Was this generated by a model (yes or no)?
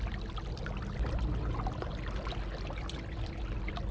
no